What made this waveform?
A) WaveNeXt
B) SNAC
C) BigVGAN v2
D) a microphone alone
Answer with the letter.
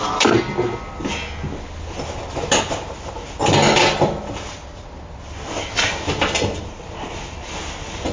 D